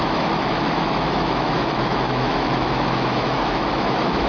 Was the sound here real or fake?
fake